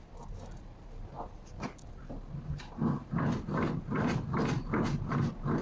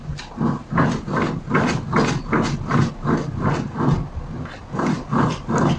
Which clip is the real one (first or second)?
second